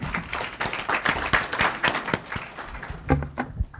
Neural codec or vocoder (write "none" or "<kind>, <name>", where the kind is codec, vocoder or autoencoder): none